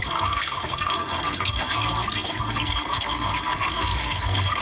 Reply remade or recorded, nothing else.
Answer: remade